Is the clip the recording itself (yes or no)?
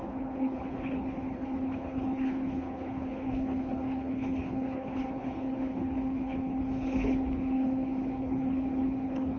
no